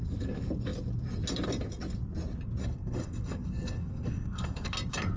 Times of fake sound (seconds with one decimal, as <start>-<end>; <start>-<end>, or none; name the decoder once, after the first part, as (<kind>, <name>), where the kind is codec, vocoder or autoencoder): 2.6-4.7 (codec, SNAC)